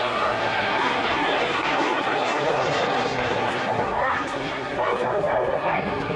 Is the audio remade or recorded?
remade